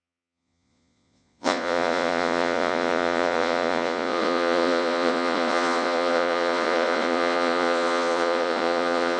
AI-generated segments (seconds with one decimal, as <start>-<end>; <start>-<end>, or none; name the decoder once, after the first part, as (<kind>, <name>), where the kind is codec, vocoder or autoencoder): 0.0-9.2 (vocoder, Vocos)